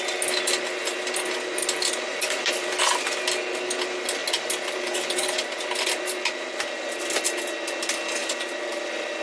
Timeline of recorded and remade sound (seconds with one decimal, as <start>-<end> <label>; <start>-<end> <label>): 0.0-2.1 recorded; 2.1-2.7 remade; 2.7-4.2 recorded; 4.2-6.9 remade; 6.9-8.2 recorded; 8.2-9.2 remade